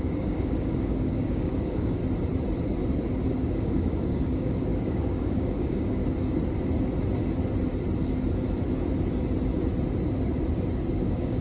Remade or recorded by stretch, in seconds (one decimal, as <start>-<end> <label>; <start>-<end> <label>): 0.0-2.0 remade; 2.0-3.3 recorded; 3.3-6.0 remade; 6.0-10.9 recorded; 10.9-11.4 remade